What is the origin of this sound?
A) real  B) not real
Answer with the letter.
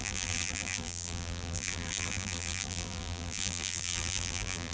B